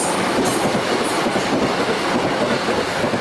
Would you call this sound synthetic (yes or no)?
no